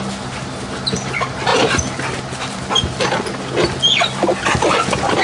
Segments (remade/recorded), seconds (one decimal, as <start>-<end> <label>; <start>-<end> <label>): 0.0-5.2 recorded